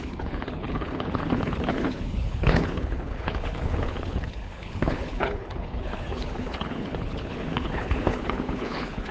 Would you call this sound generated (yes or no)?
yes